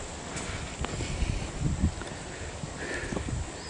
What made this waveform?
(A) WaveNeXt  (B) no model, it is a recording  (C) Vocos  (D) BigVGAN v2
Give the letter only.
B